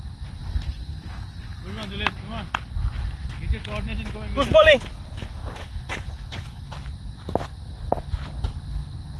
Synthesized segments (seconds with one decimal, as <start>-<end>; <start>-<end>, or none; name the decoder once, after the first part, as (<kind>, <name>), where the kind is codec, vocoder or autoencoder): 5.2-6.7 (autoencoder, DAC-VAE)